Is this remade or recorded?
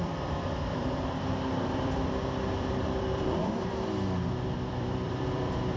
remade